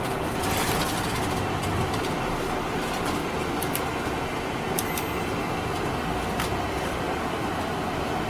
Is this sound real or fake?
real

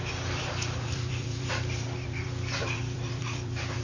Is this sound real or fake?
fake